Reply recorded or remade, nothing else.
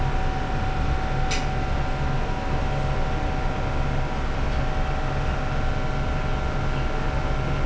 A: recorded